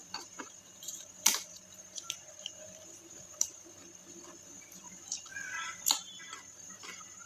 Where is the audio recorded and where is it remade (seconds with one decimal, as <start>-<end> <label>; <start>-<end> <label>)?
0.0-3.8 remade; 3.8-4.4 recorded; 4.4-5.3 remade; 5.3-5.9 recorded; 5.9-7.3 remade